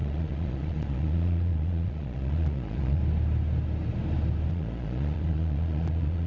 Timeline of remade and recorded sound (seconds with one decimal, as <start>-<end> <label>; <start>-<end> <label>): 0.0-3.0 remade; 3.0-4.5 recorded; 4.5-6.3 remade

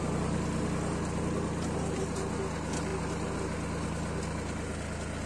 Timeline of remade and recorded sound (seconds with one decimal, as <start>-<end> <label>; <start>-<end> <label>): 0.0-5.3 recorded

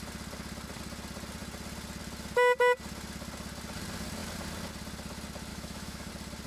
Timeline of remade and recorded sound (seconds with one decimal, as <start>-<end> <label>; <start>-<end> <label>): 0.0-5.5 recorded; 5.5-6.1 remade; 6.1-6.5 recorded

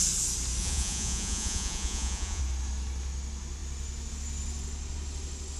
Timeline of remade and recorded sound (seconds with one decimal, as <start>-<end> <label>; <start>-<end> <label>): 0.0-0.6 recorded; 0.6-2.4 remade; 2.4-5.6 recorded

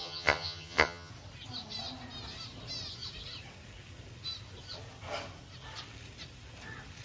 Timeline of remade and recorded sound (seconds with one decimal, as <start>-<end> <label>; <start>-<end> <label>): 0.0-1.1 remade; 1.1-7.0 recorded

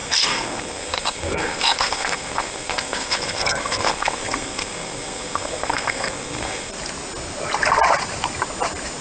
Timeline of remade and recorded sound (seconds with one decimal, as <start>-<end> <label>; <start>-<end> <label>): 0.0-6.7 remade; 6.7-9.0 recorded

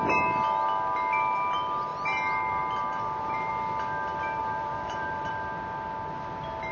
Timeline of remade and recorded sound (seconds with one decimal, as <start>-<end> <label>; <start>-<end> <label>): 0.0-1.9 recorded; 1.9-3.5 remade; 3.5-4.4 recorded; 4.4-5.3 remade; 5.3-6.7 recorded

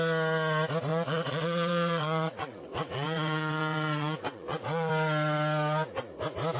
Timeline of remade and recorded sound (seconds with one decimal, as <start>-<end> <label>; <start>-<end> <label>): 0.0-0.9 recorded; 0.9-4.9 remade; 4.9-6.6 recorded